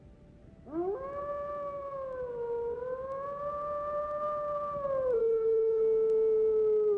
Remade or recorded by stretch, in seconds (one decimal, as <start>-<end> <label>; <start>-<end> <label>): 0.0-5.2 recorded; 5.2-5.8 remade; 5.8-7.0 recorded